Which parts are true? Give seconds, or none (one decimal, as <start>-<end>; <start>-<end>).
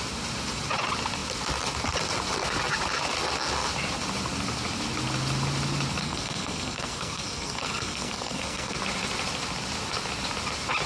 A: 0.0-6.0; 8.8-10.9